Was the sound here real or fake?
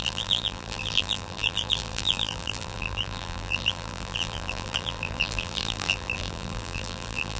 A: fake